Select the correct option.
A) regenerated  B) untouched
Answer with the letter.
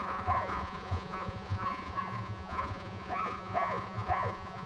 A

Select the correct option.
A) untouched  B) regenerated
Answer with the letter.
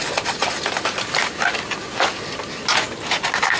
A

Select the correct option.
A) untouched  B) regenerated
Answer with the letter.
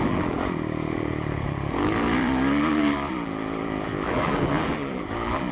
B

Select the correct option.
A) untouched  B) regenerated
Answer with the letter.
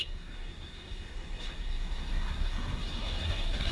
B